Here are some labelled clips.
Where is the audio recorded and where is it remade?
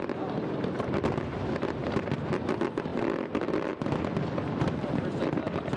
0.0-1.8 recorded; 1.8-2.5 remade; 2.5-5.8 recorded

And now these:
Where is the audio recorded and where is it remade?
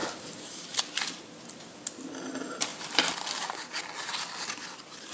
0.0-0.8 remade; 0.8-2.7 recorded; 2.7-3.8 remade; 3.8-5.1 recorded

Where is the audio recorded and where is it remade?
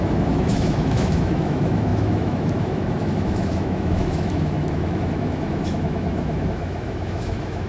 0.0-7.7 remade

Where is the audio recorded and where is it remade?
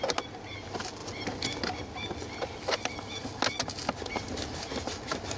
0.0-5.4 recorded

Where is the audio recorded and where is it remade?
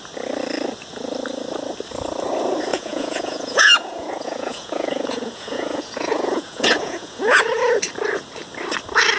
0.0-2.7 recorded; 2.7-7.8 remade; 7.8-9.2 recorded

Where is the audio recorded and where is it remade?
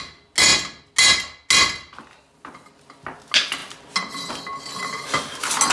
0.0-5.7 recorded